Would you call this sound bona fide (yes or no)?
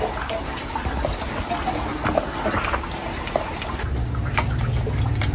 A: yes